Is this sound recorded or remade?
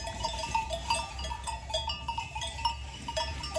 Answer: remade